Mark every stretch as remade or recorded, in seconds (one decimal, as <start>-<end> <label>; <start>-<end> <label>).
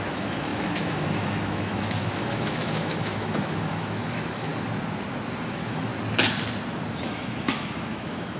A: 0.0-4.5 remade; 4.5-5.4 recorded; 5.4-5.9 remade; 5.9-6.9 recorded; 6.9-8.4 remade